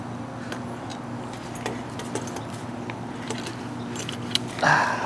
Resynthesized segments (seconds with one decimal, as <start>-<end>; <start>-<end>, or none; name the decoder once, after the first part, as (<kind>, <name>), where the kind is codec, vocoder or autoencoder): none